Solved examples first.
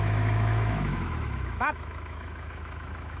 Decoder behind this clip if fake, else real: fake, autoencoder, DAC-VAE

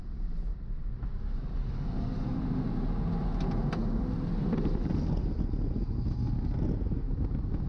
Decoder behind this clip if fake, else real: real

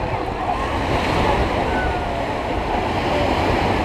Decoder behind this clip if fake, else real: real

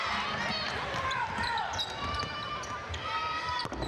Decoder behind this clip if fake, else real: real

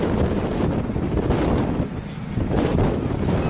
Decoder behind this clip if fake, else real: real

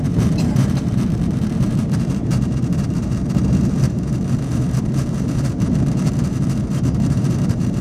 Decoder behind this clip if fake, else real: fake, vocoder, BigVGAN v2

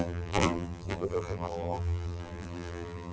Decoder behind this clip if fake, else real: fake, vocoder, BigVGAN v2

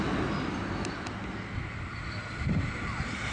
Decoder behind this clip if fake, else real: real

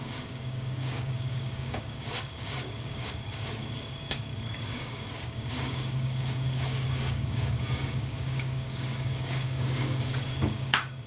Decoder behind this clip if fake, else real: fake, codec, DAC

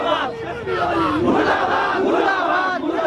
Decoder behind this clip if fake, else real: fake, vocoder, BigVGAN v2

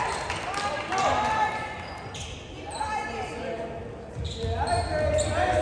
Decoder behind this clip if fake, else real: real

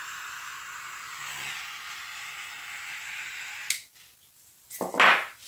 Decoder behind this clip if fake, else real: real